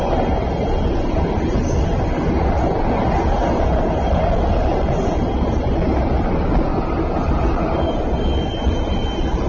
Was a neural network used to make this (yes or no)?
no